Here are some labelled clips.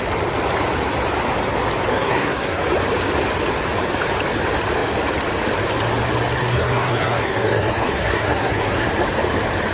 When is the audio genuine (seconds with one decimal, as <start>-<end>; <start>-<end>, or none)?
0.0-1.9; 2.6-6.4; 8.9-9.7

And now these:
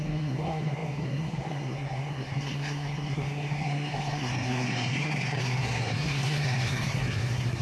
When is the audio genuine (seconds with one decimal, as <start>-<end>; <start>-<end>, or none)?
none

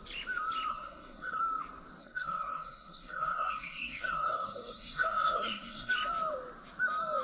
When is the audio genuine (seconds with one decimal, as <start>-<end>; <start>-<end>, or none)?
0.0-0.7; 1.4-2.0; 5.9-7.2

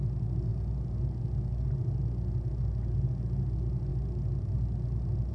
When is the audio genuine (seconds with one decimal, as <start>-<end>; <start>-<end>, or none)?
0.0-5.3

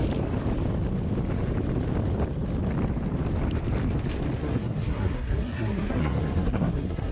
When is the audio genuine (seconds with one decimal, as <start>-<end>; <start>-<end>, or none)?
0.0-4.4

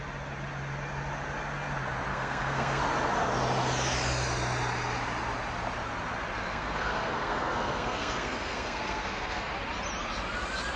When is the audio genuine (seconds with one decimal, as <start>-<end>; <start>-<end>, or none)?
0.0-2.1; 2.8-6.5; 9.5-10.8

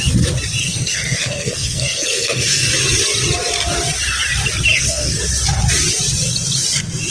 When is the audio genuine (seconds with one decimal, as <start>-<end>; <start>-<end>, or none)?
0.0-0.6; 2.7-4.7; 5.2-7.1